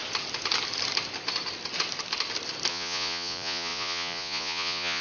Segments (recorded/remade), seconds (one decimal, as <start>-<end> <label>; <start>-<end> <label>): 0.0-2.7 recorded; 2.7-5.0 remade